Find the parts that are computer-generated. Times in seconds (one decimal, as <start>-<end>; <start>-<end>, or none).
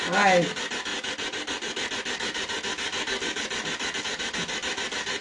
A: none